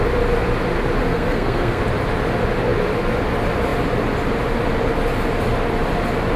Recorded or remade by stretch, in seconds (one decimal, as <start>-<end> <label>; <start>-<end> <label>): 0.0-1.0 recorded; 1.0-1.8 remade; 1.8-6.4 recorded